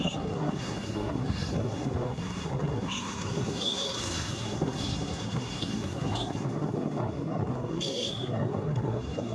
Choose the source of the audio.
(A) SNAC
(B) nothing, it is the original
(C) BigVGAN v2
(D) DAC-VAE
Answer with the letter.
A